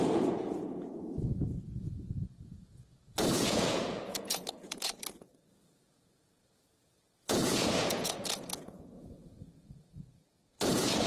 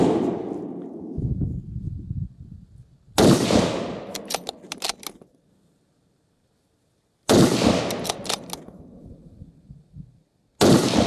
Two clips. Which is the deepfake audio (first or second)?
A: first